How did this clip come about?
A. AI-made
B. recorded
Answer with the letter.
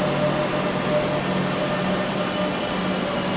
B